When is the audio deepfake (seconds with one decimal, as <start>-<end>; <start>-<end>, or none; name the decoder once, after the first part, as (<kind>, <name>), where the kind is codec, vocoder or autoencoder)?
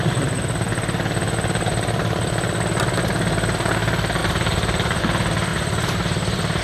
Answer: 4.2-5.0 (vocoder, BigVGAN v2); 5.5-6.6